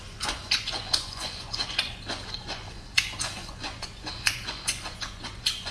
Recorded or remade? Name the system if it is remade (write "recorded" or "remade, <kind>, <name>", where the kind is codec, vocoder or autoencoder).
remade, vocoder, Vocos